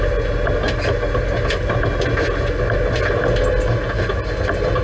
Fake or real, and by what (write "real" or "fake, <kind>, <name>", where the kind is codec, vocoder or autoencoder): real